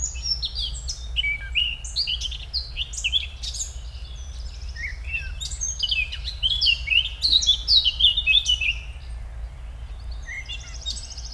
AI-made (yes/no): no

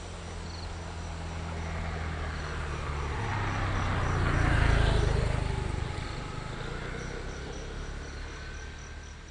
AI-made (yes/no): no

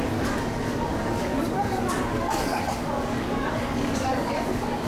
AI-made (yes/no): yes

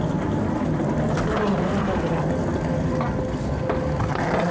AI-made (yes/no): no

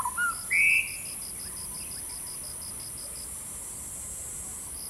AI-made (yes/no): no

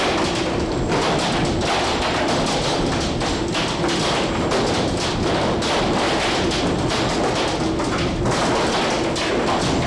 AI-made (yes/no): no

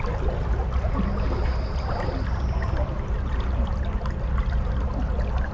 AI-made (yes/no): no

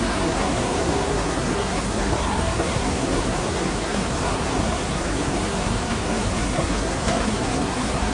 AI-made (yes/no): yes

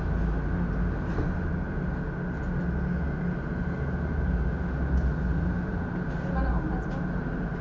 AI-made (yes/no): no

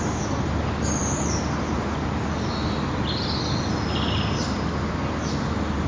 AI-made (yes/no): no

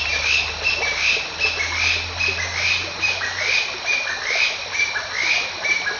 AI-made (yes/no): no